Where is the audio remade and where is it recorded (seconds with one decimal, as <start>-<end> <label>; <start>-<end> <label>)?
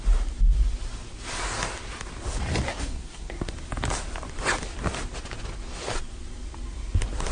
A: 0.0-2.7 recorded; 2.7-3.5 remade; 3.5-7.3 recorded